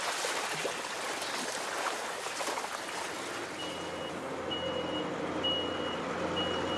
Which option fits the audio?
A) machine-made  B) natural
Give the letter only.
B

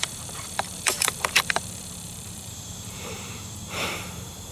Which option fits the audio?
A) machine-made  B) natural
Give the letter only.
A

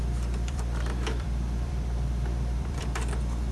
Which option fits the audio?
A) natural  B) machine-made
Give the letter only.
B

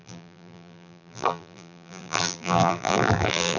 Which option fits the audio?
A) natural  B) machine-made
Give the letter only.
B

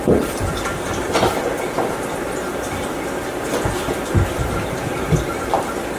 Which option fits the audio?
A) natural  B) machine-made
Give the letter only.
B